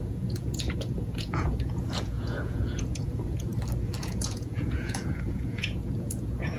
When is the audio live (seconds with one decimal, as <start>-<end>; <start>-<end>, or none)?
3.5-4.0